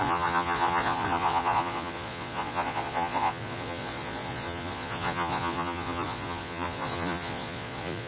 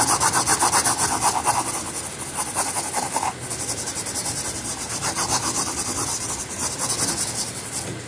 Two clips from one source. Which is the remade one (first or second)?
first